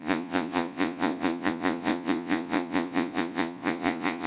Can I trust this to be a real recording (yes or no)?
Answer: no